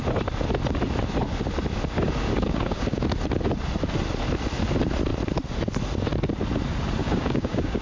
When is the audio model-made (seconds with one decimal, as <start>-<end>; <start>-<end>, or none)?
2.3-3.0; 7.0-7.8